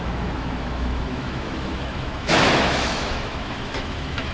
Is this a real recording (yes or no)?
no